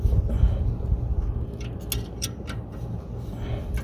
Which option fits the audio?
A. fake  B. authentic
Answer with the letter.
B